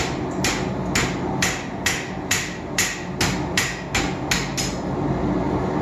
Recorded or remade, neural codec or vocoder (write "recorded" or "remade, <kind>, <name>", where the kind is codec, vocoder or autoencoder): recorded